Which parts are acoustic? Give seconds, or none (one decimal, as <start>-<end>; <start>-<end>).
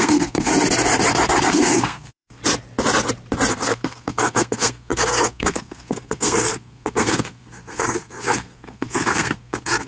0.5-1.5; 2.4-3.5